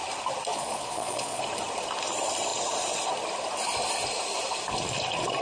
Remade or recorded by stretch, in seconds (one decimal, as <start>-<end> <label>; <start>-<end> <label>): 0.0-0.5 recorded; 0.5-1.4 remade; 1.4-5.4 recorded